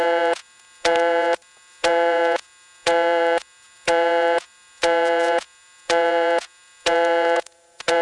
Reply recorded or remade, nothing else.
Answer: remade